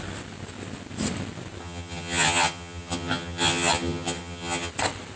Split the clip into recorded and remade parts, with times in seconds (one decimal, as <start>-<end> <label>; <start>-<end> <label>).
0.0-1.6 recorded; 1.6-4.7 remade; 4.7-5.2 recorded